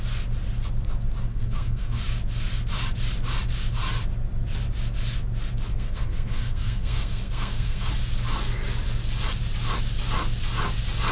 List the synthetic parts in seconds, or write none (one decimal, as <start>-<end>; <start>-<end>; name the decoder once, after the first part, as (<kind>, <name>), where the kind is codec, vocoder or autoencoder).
1.3-2.0 (codec, SNAC); 5.7-7.9